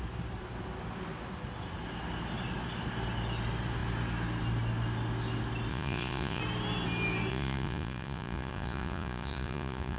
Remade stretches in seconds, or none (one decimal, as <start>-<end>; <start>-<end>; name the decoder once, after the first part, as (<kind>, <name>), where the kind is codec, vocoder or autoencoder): 5.7-6.4 (vocoder, Vocos); 7.3-10.0